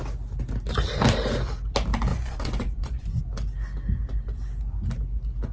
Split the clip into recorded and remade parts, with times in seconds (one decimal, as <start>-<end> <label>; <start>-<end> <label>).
0.0-2.1 recorded; 2.1-3.2 remade; 3.2-5.5 recorded